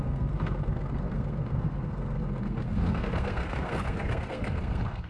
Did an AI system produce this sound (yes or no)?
yes